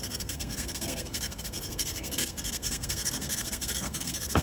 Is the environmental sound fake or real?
fake